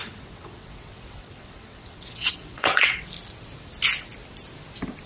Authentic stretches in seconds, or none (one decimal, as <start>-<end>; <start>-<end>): 3.1-5.1